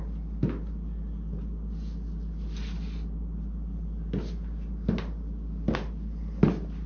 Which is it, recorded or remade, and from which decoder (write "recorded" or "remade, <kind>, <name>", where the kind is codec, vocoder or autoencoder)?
recorded